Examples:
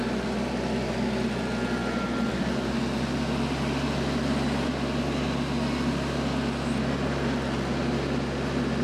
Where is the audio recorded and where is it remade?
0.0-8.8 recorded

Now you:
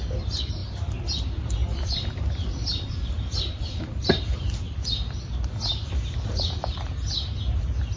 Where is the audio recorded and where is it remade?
0.0-1.6 recorded; 1.6-4.6 remade; 4.6-5.8 recorded; 5.8-6.9 remade; 6.9-8.0 recorded

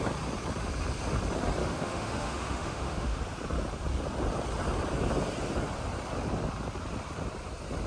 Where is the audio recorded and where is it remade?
0.0-1.6 recorded; 1.6-3.2 remade; 3.2-7.9 recorded

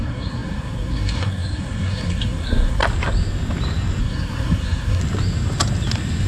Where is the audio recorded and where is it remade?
0.0-2.8 remade; 2.8-4.0 recorded; 4.0-5.0 remade; 5.0-6.3 recorded

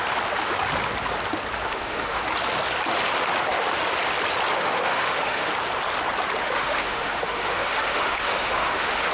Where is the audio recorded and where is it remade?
0.0-1.7 recorded; 1.7-2.2 remade; 2.2-4.5 recorded; 4.5-5.5 remade; 5.5-6.4 recorded; 6.4-9.1 remade

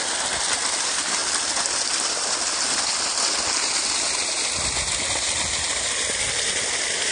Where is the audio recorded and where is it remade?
0.0-7.1 recorded

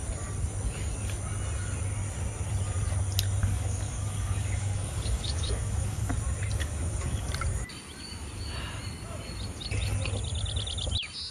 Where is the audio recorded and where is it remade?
0.0-3.4 recorded; 3.4-6.1 remade; 6.1-6.6 recorded; 6.6-7.3 remade; 7.3-11.3 recorded